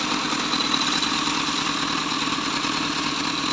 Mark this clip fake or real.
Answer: real